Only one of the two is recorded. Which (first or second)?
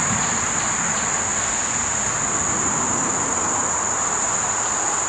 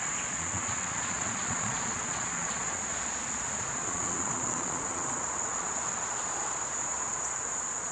first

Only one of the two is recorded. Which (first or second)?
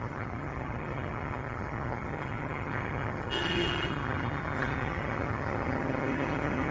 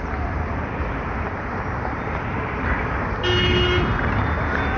second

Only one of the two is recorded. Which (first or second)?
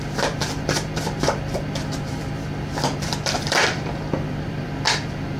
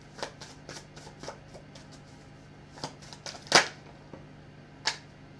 second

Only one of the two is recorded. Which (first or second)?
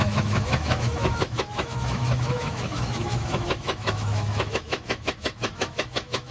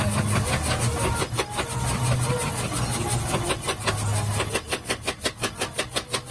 second